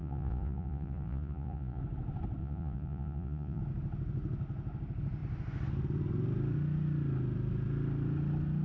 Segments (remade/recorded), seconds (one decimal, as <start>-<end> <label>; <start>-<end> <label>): 0.0-1.8 remade; 1.8-2.4 recorded; 2.4-3.6 remade; 3.6-8.6 recorded